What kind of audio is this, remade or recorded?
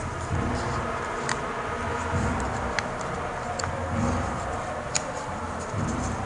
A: recorded